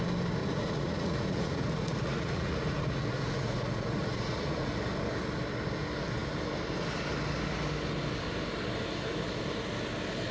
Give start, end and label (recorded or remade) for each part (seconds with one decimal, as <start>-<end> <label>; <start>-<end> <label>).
0.0-0.4 recorded; 0.4-4.7 remade; 4.7-10.3 recorded